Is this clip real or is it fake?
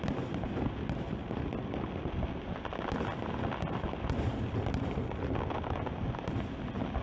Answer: real